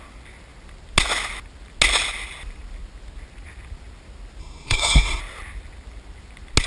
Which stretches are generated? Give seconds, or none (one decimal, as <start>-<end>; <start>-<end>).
4.4-5.2